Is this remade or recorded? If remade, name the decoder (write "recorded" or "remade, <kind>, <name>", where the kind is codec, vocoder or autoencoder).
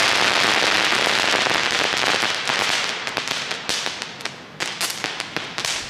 recorded